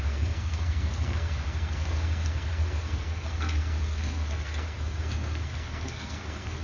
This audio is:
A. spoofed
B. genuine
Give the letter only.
A